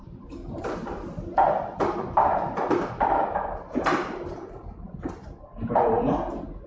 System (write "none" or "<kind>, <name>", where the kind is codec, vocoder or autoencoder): none